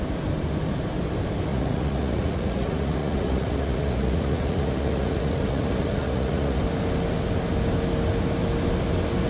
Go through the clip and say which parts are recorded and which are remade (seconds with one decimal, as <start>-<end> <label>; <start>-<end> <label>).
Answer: 0.0-1.5 recorded; 1.5-6.6 remade; 6.6-9.3 recorded